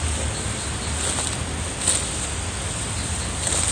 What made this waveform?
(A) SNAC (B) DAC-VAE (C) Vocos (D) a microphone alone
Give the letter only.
D